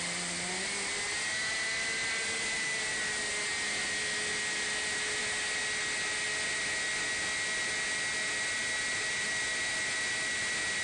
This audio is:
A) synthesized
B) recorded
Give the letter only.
B